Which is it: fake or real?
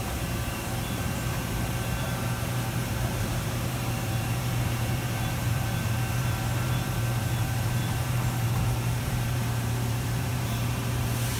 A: fake